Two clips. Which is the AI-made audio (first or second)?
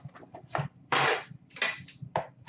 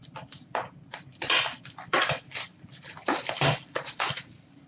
second